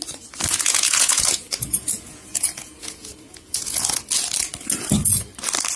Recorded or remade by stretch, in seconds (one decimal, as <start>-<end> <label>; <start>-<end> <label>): 0.0-0.5 recorded; 0.5-4.0 remade; 4.0-5.8 recorded